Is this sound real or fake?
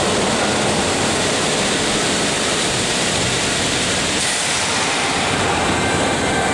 fake